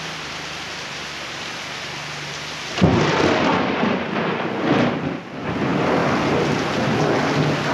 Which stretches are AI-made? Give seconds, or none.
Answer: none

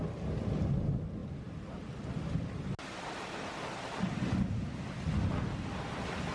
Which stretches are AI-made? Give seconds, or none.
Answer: 1.2-2.1